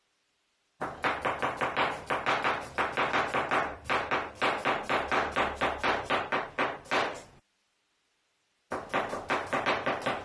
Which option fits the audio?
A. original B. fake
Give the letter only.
A